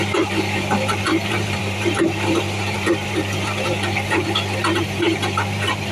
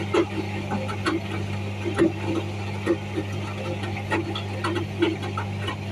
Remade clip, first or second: first